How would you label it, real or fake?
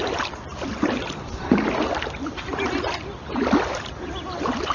real